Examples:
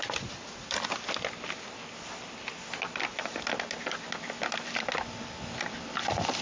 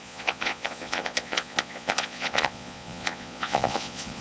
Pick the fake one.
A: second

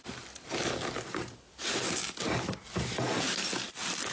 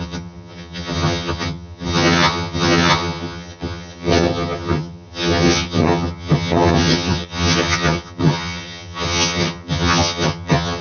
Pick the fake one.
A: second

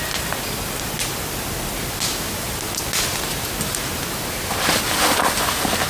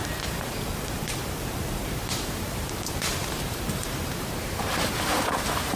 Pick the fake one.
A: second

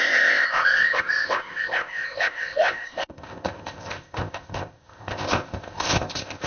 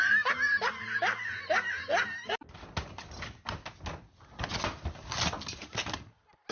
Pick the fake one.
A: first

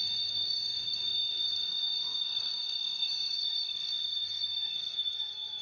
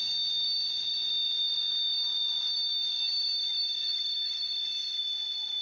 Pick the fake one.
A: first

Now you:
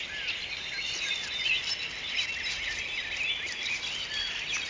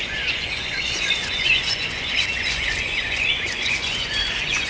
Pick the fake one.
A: second